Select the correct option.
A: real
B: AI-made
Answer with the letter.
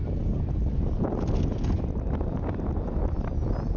A